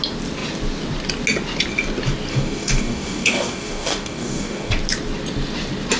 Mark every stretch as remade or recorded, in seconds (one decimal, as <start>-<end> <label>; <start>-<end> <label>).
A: 0.0-2.3 recorded; 2.3-4.7 remade; 4.7-6.0 recorded